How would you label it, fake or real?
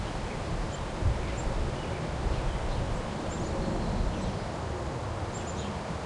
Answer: real